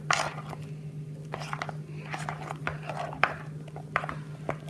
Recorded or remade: recorded